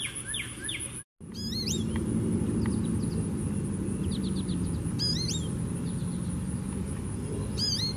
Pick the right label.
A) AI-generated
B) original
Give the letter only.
B